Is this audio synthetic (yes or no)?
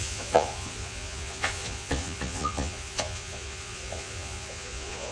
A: yes